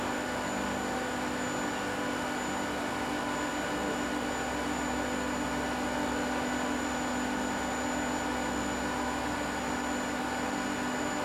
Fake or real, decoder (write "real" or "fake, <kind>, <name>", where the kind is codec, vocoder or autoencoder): real